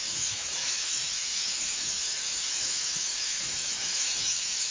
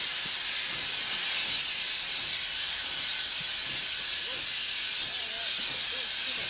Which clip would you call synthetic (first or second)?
first